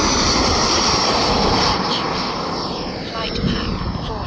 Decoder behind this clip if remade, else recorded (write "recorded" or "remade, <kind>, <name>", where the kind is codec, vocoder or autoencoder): recorded